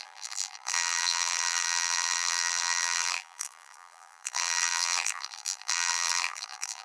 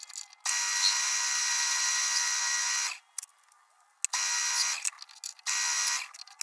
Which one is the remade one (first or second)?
first